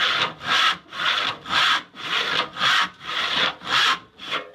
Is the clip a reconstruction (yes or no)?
no